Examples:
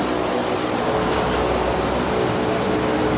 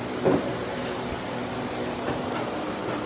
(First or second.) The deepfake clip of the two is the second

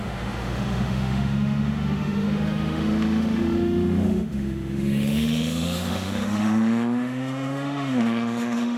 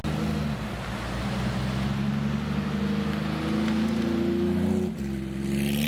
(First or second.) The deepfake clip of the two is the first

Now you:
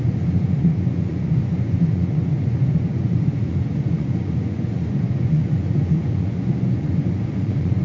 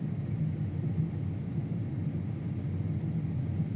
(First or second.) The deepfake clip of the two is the first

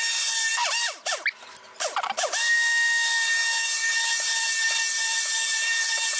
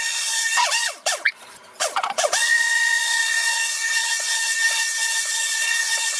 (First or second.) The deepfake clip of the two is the second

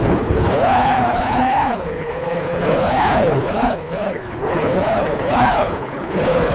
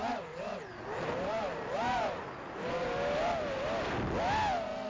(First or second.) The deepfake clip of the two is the first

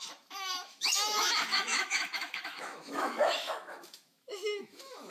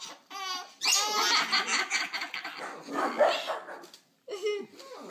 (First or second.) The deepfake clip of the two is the first